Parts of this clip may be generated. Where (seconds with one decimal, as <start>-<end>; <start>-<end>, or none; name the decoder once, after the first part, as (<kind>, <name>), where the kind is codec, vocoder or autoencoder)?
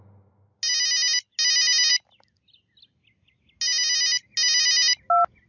none